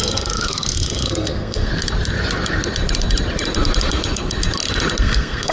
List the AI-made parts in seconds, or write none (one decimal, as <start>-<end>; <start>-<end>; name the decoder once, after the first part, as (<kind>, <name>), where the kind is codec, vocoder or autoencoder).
0.0-1.7 (codec, SNAC); 5.0-5.5